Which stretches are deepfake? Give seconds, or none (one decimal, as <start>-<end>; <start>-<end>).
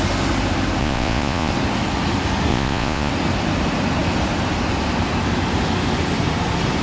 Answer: 0.8-1.5; 2.5-3.1